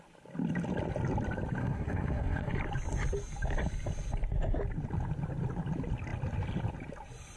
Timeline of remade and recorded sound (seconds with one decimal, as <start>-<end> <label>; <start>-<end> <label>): 0.0-1.6 recorded; 1.6-2.5 remade; 2.5-7.4 recorded